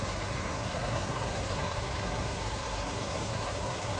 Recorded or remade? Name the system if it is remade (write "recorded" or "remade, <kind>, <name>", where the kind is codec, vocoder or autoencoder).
remade, codec, SNAC